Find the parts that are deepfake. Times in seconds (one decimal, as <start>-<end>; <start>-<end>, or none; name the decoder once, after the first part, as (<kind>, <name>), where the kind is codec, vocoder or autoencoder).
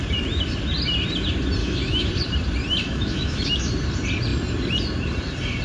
1.6-2.1 (autoencoder, DAC-VAE); 2.8-3.7